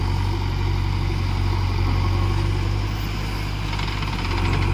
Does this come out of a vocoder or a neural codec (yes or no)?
no